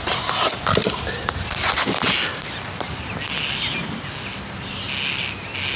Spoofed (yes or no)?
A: no